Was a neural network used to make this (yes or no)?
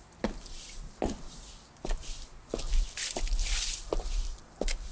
no